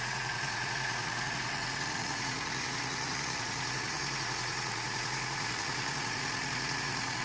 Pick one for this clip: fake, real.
fake